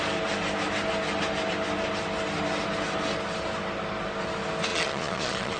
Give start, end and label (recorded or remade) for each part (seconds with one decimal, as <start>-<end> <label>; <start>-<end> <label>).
0.0-4.7 recorded; 4.7-5.6 remade